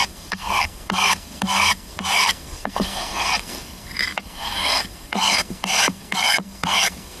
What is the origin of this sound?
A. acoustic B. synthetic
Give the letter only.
B